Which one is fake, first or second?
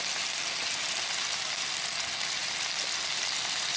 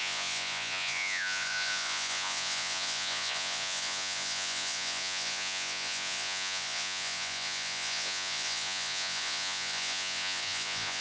second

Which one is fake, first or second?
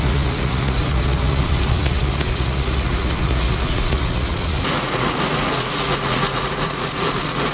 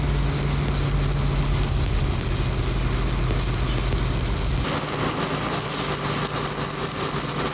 first